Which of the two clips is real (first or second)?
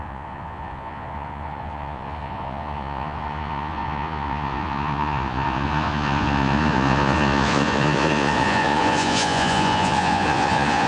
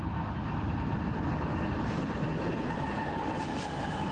second